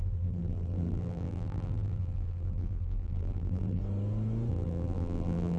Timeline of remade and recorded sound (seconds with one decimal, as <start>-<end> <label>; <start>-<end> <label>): 0.0-3.8 remade; 3.8-4.5 recorded; 4.5-5.6 remade